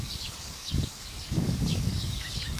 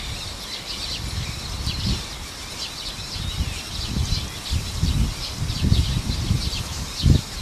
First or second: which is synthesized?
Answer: first